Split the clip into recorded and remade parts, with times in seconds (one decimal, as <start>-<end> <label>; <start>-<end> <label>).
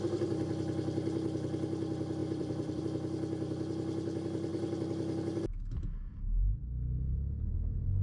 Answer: 0.0-2.2 recorded; 2.2-2.8 remade; 2.8-8.0 recorded